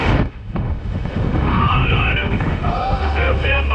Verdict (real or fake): fake